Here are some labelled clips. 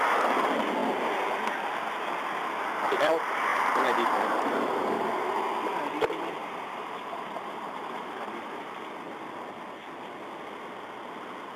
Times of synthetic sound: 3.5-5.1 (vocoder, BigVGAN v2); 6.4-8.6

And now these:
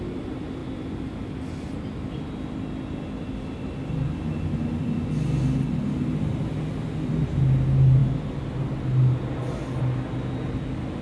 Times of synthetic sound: none

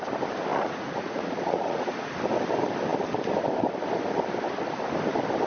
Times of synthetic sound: 0.5-2.2 (vocoder, Vocos)

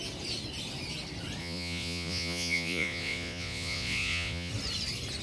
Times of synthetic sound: 1.4-4.5 (vocoder, Vocos)

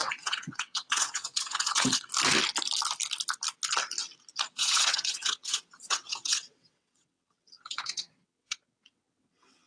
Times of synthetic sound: 0.0-2.1 (vocoder, WaveNeXt); 4.5-9.7

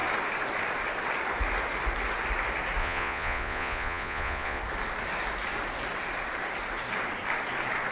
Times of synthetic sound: 2.8-4.6 (vocoder, Vocos)